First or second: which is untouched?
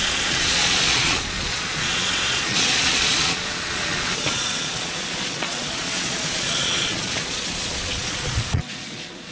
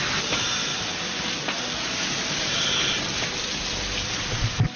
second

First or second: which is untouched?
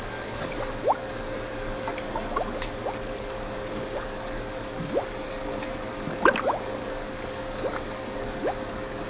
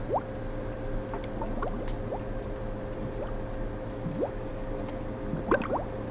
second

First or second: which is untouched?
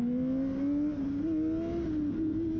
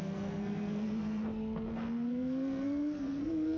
first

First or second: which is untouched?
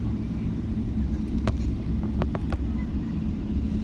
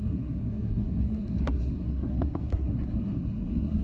first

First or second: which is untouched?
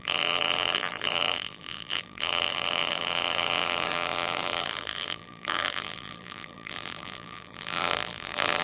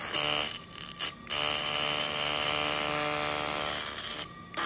second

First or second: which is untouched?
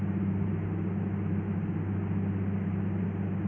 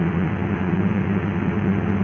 first